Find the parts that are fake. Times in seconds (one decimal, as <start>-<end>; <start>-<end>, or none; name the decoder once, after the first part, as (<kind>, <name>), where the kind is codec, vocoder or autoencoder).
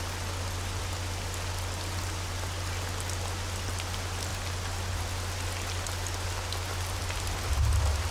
none